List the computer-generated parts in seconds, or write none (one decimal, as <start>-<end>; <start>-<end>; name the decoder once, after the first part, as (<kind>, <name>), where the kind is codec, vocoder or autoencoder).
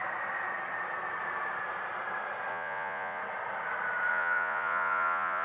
2.5-3.2 (vocoder, Vocos); 4.1-5.4